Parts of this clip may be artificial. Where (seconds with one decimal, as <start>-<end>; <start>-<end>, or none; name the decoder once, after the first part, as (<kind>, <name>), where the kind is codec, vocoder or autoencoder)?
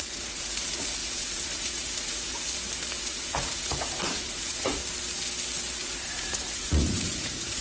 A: 0.0-2.5 (vocoder, Vocos); 3.0-4.8; 5.8-7.6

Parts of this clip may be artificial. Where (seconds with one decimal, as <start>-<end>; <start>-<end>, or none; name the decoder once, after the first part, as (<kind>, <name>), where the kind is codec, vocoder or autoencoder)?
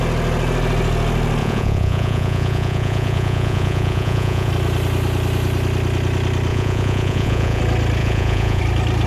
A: 1.4-4.5 (vocoder, Vocos); 6.5-7.6; 8.0-8.6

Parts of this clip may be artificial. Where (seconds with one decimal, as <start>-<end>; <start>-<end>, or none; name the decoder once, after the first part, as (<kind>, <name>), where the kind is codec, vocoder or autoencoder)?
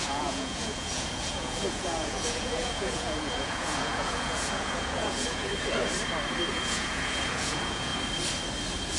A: 0.0-5.5 (vocoder, Vocos); 6.5-7.9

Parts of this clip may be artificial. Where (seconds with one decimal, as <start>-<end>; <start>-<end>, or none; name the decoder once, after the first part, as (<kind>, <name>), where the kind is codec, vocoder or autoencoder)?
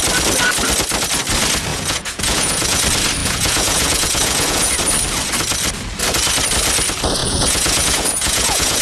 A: 1.7-2.8 (vocoder, Vocos); 3.2-4.7; 7.2-8.8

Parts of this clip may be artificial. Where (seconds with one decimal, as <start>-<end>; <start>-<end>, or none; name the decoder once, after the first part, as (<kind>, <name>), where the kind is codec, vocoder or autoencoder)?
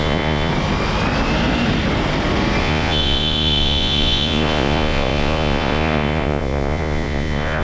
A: 0.0-0.5 (vocoder, Vocos); 2.6-7.6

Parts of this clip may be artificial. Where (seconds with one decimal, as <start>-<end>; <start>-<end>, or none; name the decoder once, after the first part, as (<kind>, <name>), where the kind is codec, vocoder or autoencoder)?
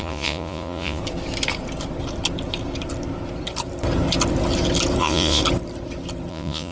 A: 0.0-1.0 (vocoder, Vocos); 5.0-5.4; 6.3-6.7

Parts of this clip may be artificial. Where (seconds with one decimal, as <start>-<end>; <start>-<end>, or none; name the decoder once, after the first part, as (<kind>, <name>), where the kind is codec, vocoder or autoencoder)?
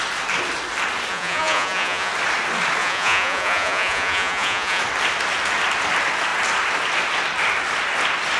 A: 1.1-2.1 (vocoder, Vocos); 2.8-4.8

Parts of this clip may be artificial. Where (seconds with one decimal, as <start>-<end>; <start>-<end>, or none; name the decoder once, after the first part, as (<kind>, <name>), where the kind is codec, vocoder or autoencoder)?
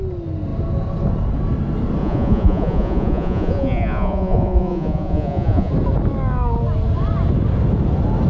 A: 2.0-5.7 (vocoder, Vocos)